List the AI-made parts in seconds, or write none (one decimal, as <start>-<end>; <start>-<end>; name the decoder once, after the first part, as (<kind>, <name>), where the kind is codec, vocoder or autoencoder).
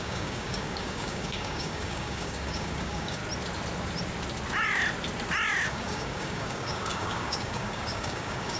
0.0-3.2 (codec, DAC); 5.7-8.6